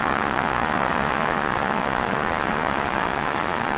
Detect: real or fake fake